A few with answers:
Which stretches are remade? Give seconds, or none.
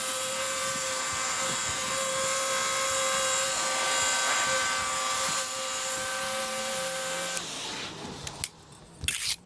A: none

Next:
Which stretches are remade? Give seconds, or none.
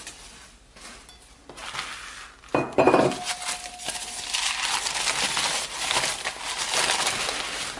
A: none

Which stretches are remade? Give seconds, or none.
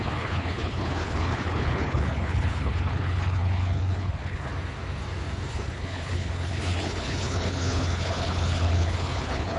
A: 0.0-4.5; 5.5-9.6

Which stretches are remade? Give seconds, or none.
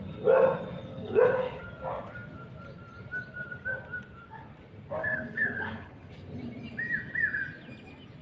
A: 0.9-1.6; 5.0-6.1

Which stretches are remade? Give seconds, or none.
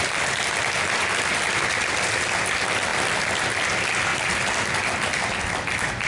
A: none